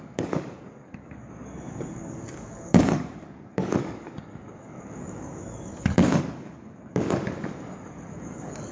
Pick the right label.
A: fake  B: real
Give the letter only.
A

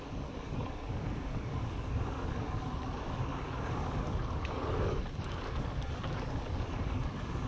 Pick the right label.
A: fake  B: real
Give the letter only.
A